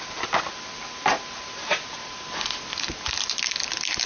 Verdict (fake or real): real